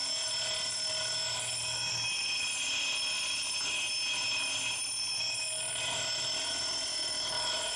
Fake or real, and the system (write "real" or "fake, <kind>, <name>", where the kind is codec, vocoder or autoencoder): real